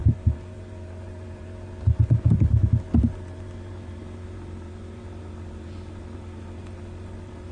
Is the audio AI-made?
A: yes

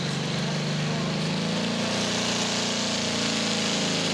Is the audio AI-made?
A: no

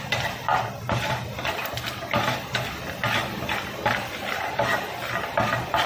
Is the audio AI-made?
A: no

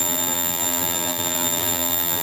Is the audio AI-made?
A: yes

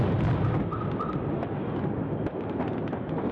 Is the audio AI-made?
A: no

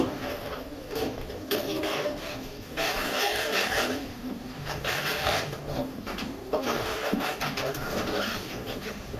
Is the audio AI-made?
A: yes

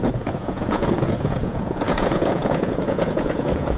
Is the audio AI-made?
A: yes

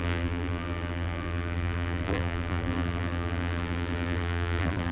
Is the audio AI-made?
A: yes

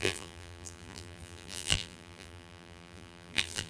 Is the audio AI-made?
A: yes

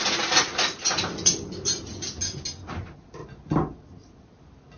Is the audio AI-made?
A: no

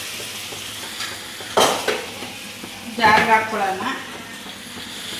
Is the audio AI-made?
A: no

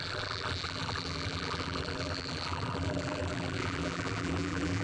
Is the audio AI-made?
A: yes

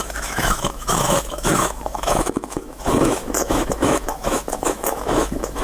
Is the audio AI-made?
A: yes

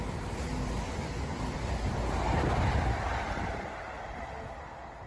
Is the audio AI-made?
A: no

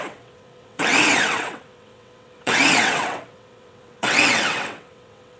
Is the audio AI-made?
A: yes